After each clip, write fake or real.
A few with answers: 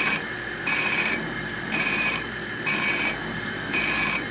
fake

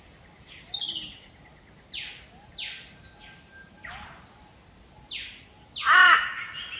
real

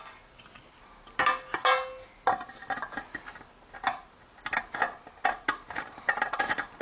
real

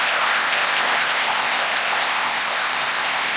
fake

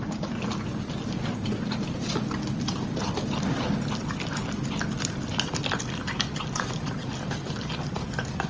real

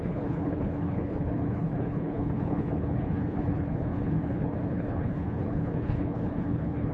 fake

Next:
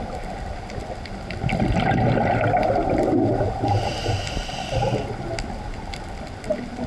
real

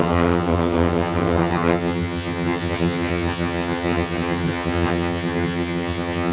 fake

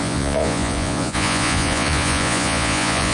fake